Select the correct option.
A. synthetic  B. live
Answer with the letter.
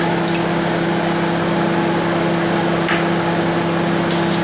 B